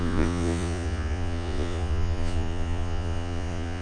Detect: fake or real fake